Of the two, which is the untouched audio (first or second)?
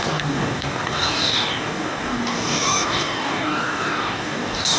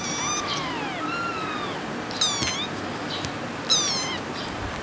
second